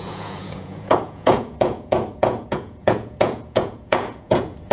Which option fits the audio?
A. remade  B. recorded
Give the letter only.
A